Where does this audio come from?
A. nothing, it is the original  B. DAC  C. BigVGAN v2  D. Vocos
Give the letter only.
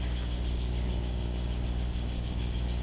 B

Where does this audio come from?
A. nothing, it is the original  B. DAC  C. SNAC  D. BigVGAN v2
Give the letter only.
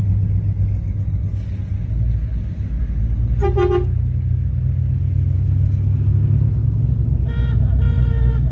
A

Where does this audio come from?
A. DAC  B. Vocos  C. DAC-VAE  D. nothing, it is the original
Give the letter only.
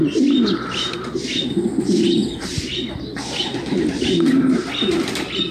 D